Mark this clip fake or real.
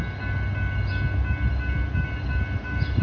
real